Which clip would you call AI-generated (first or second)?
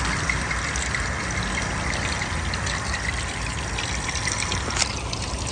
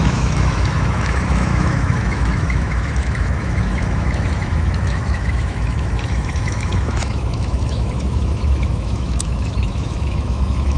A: second